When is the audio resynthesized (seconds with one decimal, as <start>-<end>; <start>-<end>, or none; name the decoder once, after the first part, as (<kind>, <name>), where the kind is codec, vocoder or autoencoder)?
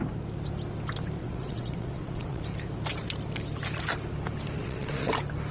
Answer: 1.2-2.4 (vocoder, WaveNeXt); 4.6-5.1